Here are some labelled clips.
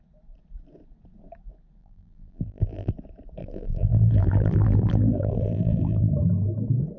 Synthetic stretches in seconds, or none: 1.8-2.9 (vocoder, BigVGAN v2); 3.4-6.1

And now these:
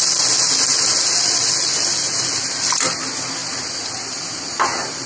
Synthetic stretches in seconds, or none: none

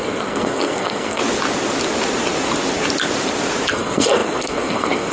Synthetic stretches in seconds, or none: 0.0-1.2 (codec, SNAC); 3.7-5.1

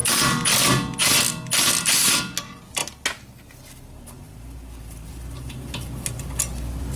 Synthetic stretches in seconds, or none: none